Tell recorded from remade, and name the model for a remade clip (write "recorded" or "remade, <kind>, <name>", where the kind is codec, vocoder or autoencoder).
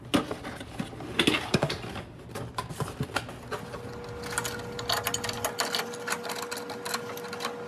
recorded